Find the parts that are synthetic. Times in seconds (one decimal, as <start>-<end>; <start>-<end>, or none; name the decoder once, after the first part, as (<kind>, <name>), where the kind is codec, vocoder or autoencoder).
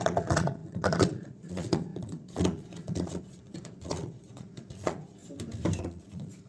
0.0-5.2 (vocoder, Vocos); 5.8-6.5